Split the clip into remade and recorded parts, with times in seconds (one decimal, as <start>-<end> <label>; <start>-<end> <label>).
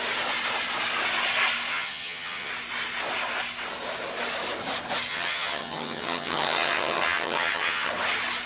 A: 0.0-1.7 recorded; 1.7-2.5 remade; 2.5-5.1 recorded; 5.1-7.9 remade; 7.9-8.5 recorded